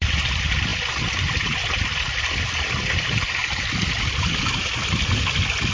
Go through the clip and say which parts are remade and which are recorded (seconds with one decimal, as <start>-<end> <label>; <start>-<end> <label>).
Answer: 0.0-5.7 remade